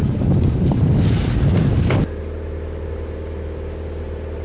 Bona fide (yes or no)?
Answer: yes